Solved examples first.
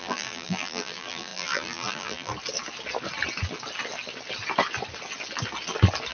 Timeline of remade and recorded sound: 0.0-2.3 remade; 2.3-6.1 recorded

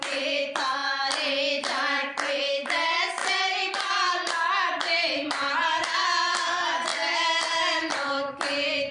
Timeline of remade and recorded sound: 0.0-6.9 remade; 6.9-7.5 recorded; 7.5-8.9 remade

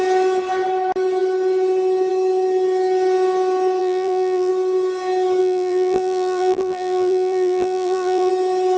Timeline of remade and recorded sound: 0.0-3.8 recorded; 3.8-4.5 remade; 4.5-5.4 recorded; 5.4-8.3 remade; 8.3-8.8 recorded

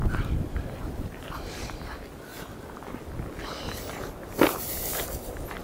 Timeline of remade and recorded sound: 0.0-5.6 recorded

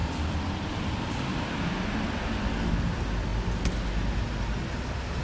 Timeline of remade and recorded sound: 0.0-2.7 remade; 2.7-5.2 recorded